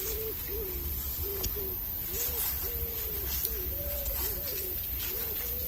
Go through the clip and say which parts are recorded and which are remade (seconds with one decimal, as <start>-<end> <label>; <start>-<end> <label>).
0.0-4.0 recorded; 4.0-4.5 remade; 4.5-5.7 recorded